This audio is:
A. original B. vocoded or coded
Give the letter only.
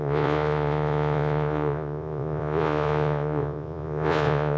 B